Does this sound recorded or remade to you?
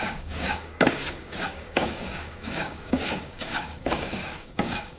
remade